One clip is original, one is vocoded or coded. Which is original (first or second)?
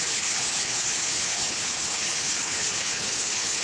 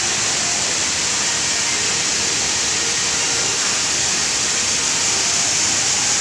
second